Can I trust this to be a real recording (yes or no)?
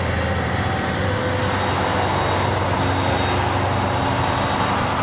yes